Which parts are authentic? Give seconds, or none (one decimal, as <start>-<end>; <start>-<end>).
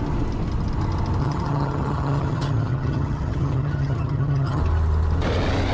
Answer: 0.0-1.2; 4.6-5.7